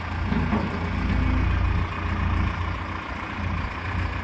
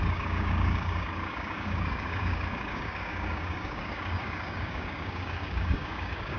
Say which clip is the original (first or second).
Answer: first